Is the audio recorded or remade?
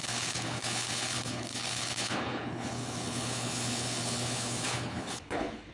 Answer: remade